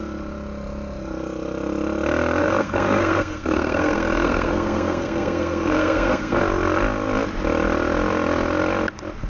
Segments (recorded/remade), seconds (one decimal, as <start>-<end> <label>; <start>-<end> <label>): 0.0-2.4 recorded; 2.4-6.4 remade; 6.4-9.3 recorded